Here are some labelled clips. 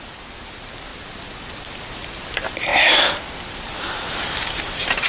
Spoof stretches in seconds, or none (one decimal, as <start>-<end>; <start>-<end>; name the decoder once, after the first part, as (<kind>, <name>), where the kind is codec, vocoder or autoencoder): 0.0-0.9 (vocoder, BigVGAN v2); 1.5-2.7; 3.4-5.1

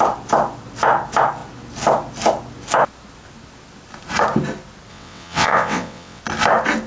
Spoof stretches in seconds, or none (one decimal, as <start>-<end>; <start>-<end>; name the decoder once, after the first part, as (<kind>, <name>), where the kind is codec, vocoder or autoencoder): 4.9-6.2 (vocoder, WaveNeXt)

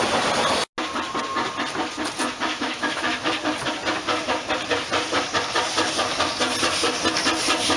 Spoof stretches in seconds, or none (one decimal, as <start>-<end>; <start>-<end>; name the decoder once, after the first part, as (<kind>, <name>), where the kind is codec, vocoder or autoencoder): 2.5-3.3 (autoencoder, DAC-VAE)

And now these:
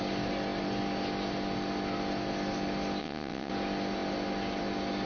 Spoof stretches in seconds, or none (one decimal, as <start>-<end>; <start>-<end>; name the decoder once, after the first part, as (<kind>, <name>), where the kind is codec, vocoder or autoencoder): 3.0-3.5 (vocoder, WaveNeXt)

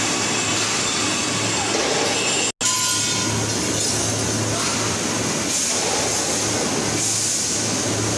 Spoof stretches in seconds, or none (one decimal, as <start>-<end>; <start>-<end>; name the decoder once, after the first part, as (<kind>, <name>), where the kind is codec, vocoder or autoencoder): 4.7-5.3 (vocoder, BigVGAN v2)